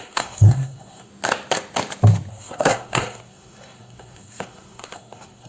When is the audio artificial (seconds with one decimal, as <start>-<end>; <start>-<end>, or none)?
0.0-1.1; 2.3-5.5